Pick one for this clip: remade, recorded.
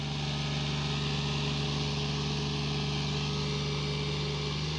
recorded